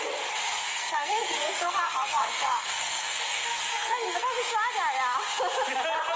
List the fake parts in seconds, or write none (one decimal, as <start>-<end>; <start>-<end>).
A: 0.7-4.4